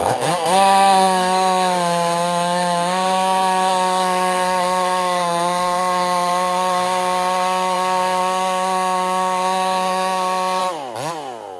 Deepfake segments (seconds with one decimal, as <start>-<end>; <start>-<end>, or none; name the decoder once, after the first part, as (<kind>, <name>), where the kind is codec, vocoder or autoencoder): 0.0-10.6 (codec, SNAC)